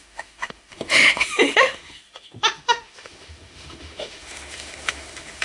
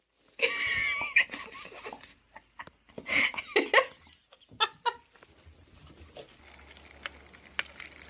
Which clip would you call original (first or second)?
second